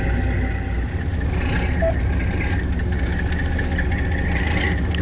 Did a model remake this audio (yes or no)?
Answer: no